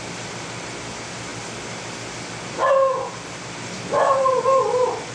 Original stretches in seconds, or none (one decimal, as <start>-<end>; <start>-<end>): 0.0-5.1